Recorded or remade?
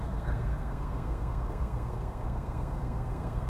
remade